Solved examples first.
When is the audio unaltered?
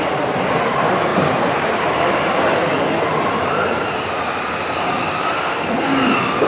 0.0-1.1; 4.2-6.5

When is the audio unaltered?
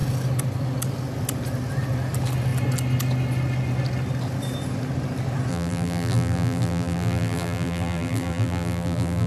0.0-5.5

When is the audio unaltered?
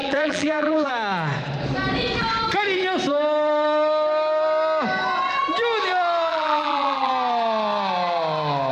0.9-6.3; 7.1-8.7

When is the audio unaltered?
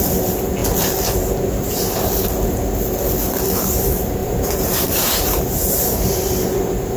0.0-4.2; 5.4-7.0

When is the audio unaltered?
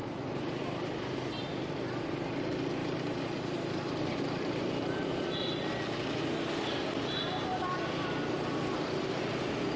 0.9-2.8; 5.1-9.8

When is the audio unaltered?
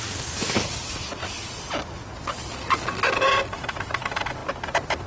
0.0-5.1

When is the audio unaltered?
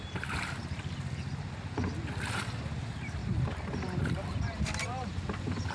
1.2-2.6; 3.2-4.2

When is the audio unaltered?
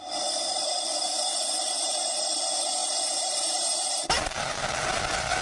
0.0-2.8